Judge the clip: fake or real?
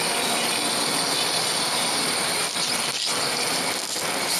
real